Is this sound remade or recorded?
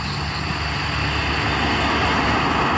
recorded